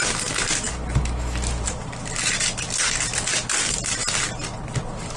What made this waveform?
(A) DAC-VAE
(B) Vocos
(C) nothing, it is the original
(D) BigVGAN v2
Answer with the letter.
C